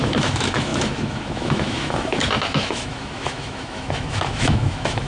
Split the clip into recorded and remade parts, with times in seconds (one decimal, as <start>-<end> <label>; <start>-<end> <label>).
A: 0.0-5.1 remade